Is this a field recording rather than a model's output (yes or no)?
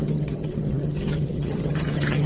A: no